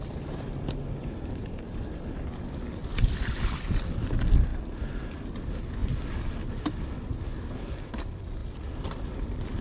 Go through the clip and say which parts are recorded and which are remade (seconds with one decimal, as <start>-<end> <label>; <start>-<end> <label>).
0.0-2.8 recorded; 2.8-3.3 remade; 3.3-4.5 recorded; 4.5-5.2 remade; 5.2-8.4 recorded; 8.4-9.6 remade